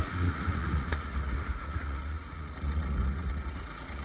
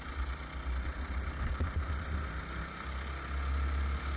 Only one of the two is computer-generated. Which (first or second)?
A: first